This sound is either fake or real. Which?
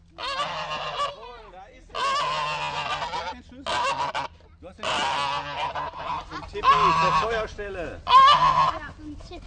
real